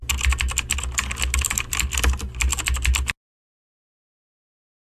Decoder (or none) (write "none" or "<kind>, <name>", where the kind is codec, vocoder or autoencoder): none